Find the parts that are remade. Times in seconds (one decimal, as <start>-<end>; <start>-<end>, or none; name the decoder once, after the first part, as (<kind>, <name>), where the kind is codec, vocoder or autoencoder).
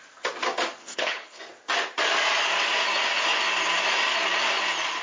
0.8-1.4 (codec, HILCodec)